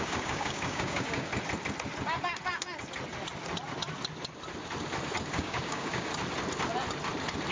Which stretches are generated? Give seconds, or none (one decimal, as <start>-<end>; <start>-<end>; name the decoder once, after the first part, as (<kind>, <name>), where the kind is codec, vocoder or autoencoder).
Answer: 0.0-1.3 (codec, DAC); 5.3-6.1